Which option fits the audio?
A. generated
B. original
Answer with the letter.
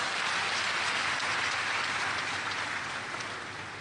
B